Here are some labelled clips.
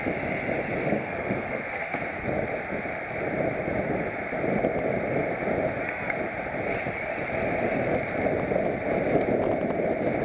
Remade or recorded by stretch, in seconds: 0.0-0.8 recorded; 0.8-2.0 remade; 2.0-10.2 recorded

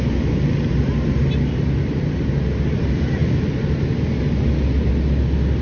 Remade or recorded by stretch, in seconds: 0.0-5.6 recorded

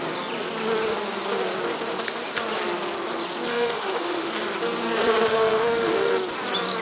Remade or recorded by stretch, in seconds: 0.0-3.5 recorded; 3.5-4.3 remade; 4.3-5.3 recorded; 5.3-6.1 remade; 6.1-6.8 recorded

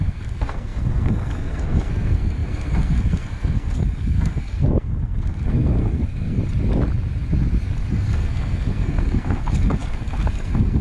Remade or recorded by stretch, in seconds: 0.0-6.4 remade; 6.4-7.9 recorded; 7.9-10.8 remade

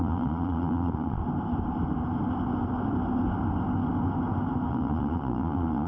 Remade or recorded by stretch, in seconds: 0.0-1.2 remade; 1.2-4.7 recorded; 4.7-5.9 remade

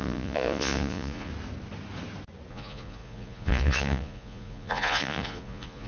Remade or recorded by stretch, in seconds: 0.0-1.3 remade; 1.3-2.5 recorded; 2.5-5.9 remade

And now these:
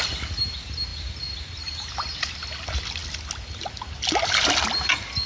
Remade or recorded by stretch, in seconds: 0.0-5.3 recorded